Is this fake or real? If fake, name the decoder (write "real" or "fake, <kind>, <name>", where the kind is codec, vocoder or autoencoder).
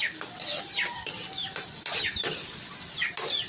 real